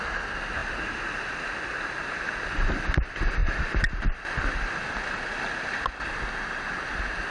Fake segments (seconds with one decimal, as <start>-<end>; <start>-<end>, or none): none

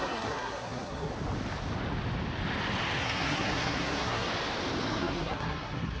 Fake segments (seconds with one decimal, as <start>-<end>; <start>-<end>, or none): 0.0-1.1; 3.0-4.3; 4.8-6.0

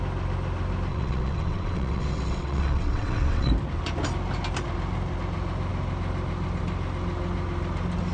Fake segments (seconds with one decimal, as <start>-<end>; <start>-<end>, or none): 0.9-3.5

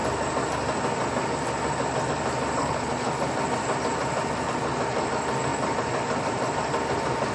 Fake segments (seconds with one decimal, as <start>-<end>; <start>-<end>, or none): 2.6-3.1

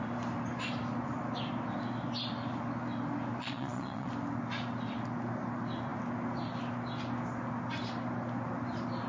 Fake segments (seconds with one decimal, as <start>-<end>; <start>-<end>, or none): 3.4-4.1